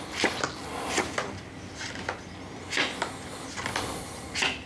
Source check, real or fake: real